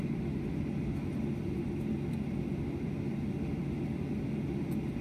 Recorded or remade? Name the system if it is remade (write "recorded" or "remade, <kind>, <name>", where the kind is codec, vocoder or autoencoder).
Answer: recorded